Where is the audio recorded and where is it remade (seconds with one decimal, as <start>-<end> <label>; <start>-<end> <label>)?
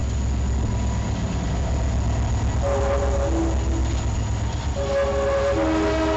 0.0-6.2 recorded